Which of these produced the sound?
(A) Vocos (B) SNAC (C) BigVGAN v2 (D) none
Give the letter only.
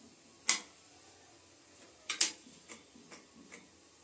D